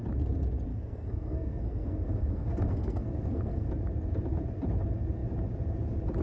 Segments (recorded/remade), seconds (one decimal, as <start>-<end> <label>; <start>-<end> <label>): 0.0-0.7 recorded; 0.7-3.7 remade; 3.7-6.2 recorded

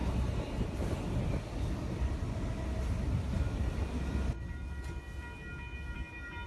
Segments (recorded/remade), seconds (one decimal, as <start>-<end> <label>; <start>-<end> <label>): 0.0-6.5 recorded

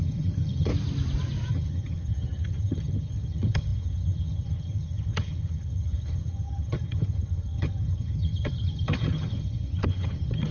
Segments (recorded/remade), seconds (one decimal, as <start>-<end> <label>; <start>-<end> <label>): 0.0-0.7 remade; 0.7-1.5 recorded; 1.5-10.5 remade

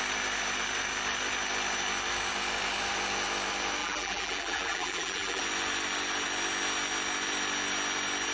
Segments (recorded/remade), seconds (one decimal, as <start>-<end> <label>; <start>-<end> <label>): 0.0-3.8 recorded; 3.8-5.4 remade; 5.4-8.3 recorded

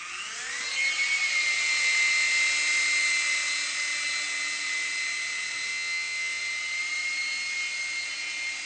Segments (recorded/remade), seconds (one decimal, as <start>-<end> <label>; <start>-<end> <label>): 0.0-5.7 recorded; 5.7-6.4 remade; 6.4-8.7 recorded